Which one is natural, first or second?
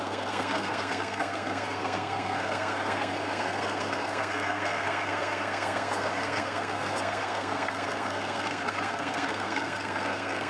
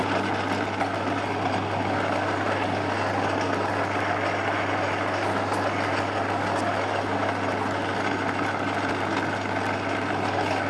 second